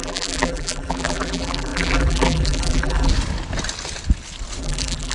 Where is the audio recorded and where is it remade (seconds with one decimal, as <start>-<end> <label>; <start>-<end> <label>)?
0.0-3.1 remade; 3.1-4.6 recorded; 4.6-5.1 remade